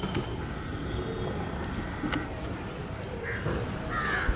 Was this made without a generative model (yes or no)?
yes